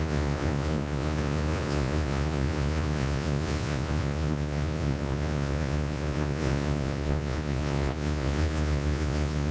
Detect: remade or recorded remade